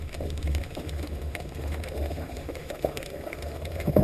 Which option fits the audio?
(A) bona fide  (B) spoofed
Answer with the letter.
B